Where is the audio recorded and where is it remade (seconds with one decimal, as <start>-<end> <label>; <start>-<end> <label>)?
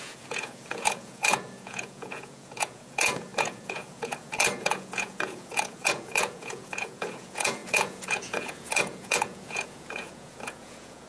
0.0-11.1 remade